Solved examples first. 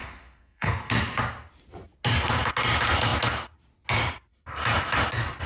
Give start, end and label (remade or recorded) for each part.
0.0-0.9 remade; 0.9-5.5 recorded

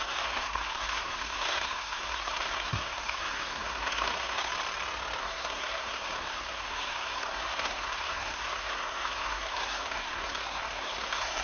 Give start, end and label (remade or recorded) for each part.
0.0-4.5 remade; 4.5-5.2 recorded; 5.2-11.4 remade

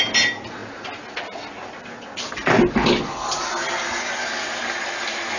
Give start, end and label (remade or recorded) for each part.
0.0-5.4 recorded

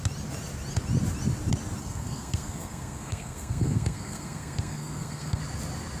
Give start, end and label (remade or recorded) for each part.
0.0-1.8 recorded; 1.8-5.4 remade; 5.4-6.0 recorded

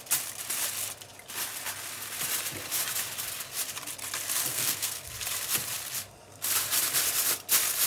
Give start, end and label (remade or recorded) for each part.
0.0-4.5 recorded; 4.5-5.0 remade; 5.0-7.9 recorded